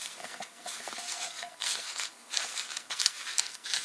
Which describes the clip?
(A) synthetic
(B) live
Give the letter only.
A